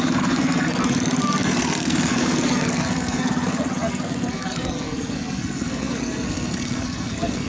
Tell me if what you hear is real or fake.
fake